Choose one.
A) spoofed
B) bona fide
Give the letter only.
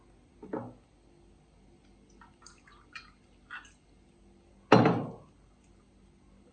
B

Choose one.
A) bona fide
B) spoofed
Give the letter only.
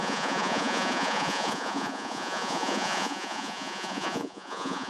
B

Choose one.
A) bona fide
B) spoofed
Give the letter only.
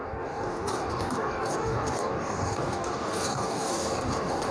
B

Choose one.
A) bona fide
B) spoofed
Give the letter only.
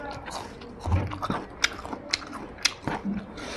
A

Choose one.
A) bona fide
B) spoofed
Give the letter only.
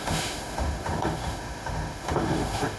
B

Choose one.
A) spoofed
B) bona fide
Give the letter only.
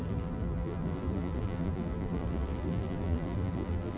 A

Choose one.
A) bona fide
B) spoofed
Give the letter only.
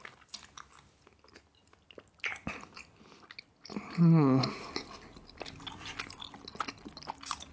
A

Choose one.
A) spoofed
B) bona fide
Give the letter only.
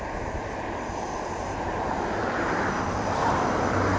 A